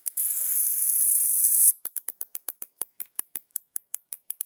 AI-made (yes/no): yes